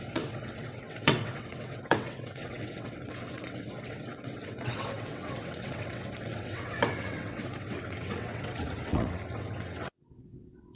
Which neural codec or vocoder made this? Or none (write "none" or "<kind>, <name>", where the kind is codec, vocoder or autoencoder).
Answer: vocoder, WaveNeXt